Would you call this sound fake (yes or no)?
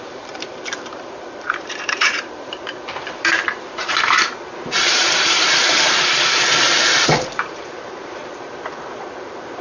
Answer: yes